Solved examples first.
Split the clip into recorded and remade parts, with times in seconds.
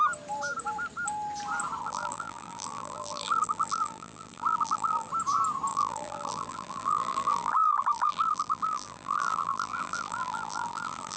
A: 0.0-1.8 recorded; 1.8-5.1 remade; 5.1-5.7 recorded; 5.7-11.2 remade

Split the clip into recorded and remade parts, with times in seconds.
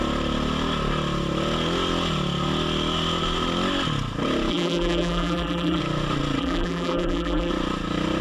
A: 0.0-4.5 recorded; 4.5-5.8 remade; 5.8-6.4 recorded; 6.4-7.5 remade; 7.5-8.2 recorded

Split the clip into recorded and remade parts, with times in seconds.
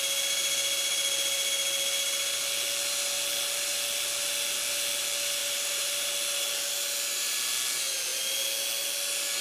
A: 0.0-5.4 recorded; 5.4-6.1 remade; 6.1-9.4 recorded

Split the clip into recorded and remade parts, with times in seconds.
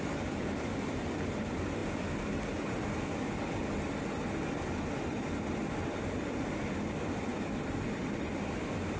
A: 0.0-9.0 remade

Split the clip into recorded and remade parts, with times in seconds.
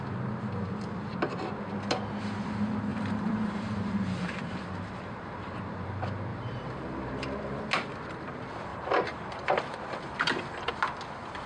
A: 0.0-2.9 recorded; 2.9-5.5 remade; 5.5-6.3 recorded; 6.3-7.6 remade; 7.6-8.7 recorded; 8.7-9.6 remade; 9.6-11.5 recorded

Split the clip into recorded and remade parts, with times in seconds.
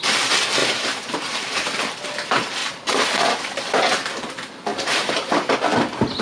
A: 0.0-0.6 recorded; 0.6-1.8 remade; 1.8-2.6 recorded; 2.6-3.6 remade; 3.6-4.7 recorded; 4.7-5.5 remade; 5.5-6.2 recorded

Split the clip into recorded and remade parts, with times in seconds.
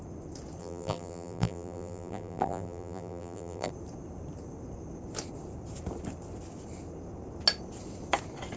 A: 0.0-0.6 recorded; 0.6-3.7 remade; 3.7-8.6 recorded